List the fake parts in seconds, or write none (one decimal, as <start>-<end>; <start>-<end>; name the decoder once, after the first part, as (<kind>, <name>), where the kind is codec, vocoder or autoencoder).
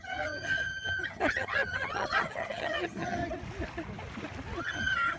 0.0-3.2 (vocoder, HiFi-GAN); 4.6-5.2